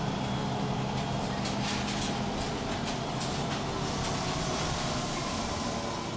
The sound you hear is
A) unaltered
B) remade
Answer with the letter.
A